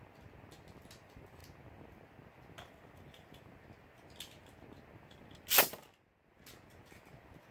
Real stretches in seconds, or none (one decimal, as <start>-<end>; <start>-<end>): 0.0-7.5